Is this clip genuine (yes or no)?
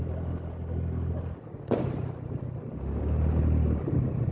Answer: yes